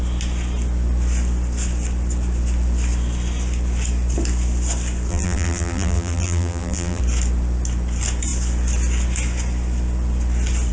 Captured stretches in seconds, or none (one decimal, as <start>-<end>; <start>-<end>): 0.0-5.1; 7.0-10.7